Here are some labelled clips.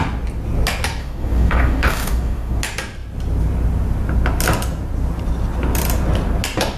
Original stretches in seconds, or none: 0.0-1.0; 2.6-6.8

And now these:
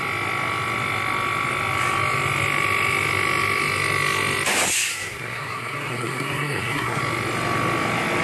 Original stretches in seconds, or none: 0.0-4.9; 7.0-8.2

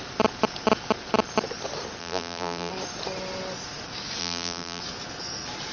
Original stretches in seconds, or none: 0.0-2.0; 2.7-4.2; 4.8-5.7